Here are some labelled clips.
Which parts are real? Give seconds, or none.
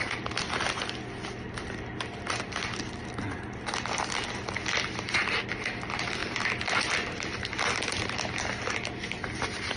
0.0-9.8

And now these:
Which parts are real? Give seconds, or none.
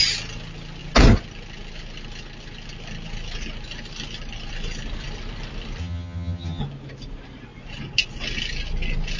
0.0-5.8; 6.6-9.2